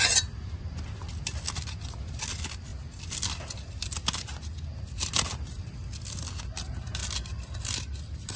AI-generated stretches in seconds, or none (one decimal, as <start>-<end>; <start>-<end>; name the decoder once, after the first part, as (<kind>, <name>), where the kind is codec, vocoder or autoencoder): none